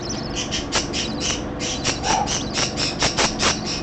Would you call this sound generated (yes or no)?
no